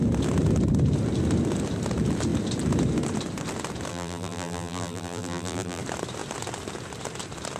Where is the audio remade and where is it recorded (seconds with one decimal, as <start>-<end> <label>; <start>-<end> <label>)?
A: 0.0-3.9 recorded; 3.9-5.8 remade; 5.8-7.6 recorded